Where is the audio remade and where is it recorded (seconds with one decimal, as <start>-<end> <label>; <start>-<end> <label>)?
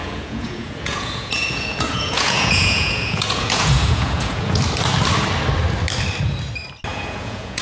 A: 0.0-4.6 remade; 4.6-6.9 recorded; 6.9-7.6 remade